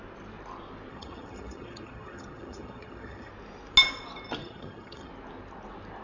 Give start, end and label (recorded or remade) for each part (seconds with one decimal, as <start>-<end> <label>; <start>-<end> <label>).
0.0-0.9 recorded; 0.9-3.3 remade; 3.3-4.4 recorded; 4.4-5.1 remade; 5.1-6.0 recorded